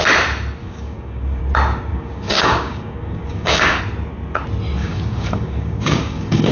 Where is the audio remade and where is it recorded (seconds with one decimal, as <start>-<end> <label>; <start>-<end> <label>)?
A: 0.0-0.6 recorded; 0.6-1.4 remade; 1.4-1.9 recorded; 1.9-3.8 remade; 3.8-4.8 recorded; 4.8-6.5 remade